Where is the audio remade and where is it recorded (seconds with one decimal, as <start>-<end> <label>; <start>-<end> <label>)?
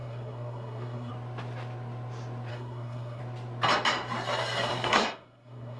0.0-1.1 remade; 1.1-2.5 recorded; 2.5-3.2 remade; 3.2-4.7 recorded; 4.7-5.8 remade